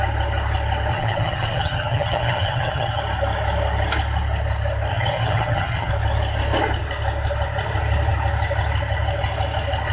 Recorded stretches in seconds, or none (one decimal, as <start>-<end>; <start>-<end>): 0.0-0.9; 3.0-4.9; 5.9-9.9